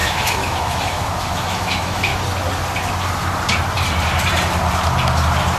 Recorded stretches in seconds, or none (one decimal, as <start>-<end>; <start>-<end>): 2.1-5.6